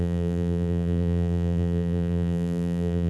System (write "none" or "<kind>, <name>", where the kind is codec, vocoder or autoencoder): vocoder, BigVGAN v2